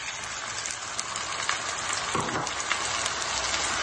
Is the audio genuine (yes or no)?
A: yes